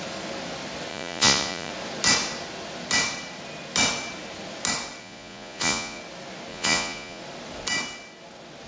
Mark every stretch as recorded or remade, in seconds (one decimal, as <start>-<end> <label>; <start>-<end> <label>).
0.0-0.9 recorded; 0.9-1.7 remade; 1.7-5.0 recorded; 5.0-6.0 remade; 6.0-6.5 recorded; 6.5-7.2 remade; 7.2-8.7 recorded

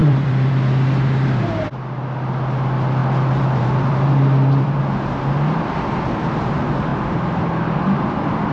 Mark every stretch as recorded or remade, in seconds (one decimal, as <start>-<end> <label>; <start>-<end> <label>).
0.0-0.5 remade; 0.5-3.0 recorded; 3.0-4.8 remade; 4.8-8.5 recorded

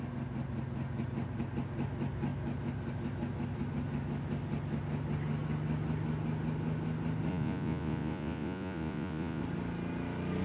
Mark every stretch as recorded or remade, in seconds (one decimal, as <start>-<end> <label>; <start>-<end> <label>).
0.0-7.3 recorded; 7.3-9.4 remade; 9.4-10.4 recorded

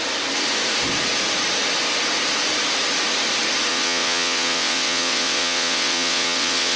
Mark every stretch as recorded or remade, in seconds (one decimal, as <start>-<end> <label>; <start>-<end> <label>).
0.0-3.7 recorded; 3.7-6.8 remade

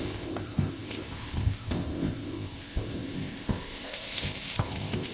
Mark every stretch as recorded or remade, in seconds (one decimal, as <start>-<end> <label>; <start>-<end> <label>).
0.0-5.1 remade